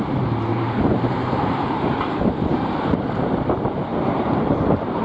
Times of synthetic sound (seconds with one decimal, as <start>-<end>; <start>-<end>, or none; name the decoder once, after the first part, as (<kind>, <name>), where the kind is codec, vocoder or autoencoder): 0.5-3.0 (vocoder, BigVGAN v2); 3.9-5.0